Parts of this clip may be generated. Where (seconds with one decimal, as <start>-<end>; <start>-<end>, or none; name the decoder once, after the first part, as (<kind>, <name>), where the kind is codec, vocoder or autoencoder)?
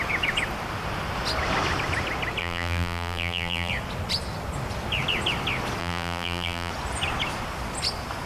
2.4-3.7 (vocoder, BigVGAN v2); 5.8-6.7